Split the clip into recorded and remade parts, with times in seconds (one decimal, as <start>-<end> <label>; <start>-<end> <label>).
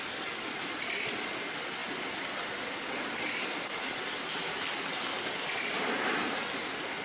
0.0-7.0 recorded